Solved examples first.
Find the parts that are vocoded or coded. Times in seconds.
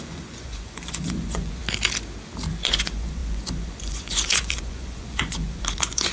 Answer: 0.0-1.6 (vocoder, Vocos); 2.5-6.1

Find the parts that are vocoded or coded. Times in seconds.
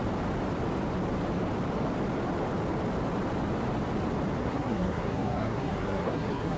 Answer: 4.4-6.6 (codec, SNAC)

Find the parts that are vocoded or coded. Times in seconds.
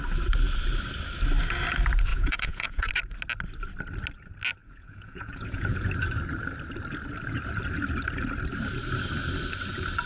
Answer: 2.1-2.9 (vocoder, Vocos); 4.6-5.9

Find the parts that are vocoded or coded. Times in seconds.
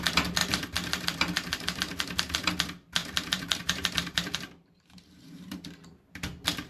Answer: 0.4-2.5 (vocoder, BigVGAN v2); 3.0-5.7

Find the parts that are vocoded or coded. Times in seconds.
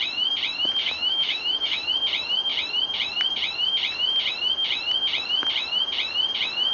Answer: 0.8-1.9 (autoencoder, DAC-VAE)